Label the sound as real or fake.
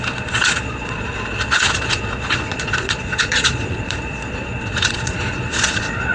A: fake